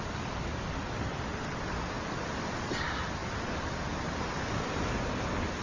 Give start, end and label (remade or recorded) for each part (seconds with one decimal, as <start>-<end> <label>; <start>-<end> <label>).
0.0-1.3 recorded; 1.3-1.9 remade; 1.9-3.2 recorded; 3.2-4.7 remade; 4.7-5.6 recorded